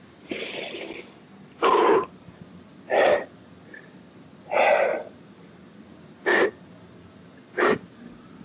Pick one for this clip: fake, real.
real